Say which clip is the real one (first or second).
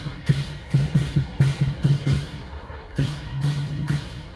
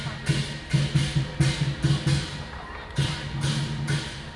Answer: second